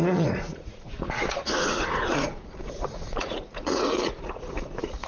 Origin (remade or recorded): remade